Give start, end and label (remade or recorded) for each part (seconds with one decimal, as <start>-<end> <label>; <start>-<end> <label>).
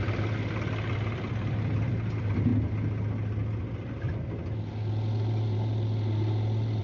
0.0-2.5 remade; 2.5-6.8 recorded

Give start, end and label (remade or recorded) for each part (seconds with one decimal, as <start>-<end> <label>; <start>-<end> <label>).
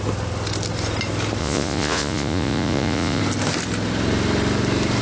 0.0-1.4 recorded; 1.4-3.2 remade; 3.2-5.0 recorded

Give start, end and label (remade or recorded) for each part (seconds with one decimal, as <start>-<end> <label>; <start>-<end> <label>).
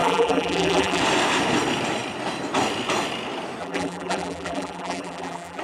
0.0-1.0 remade; 1.0-3.6 recorded; 3.6-5.6 remade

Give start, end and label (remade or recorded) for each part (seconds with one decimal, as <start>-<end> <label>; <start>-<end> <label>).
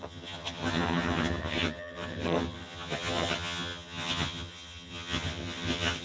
0.0-6.0 remade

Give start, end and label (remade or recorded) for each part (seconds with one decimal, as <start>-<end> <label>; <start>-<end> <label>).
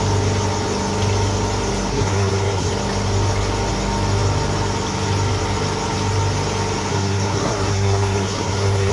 0.0-1.9 recorded; 1.9-2.7 remade; 2.7-6.9 recorded; 6.9-8.9 remade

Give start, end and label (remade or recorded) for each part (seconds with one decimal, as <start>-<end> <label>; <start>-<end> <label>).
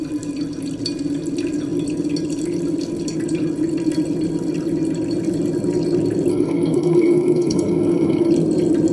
0.0-6.3 recorded; 6.3-8.3 remade; 8.3-8.9 recorded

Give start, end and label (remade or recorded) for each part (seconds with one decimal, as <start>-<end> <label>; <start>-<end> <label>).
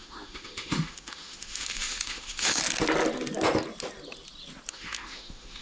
0.0-2.6 remade; 2.6-4.7 recorded; 4.7-5.6 remade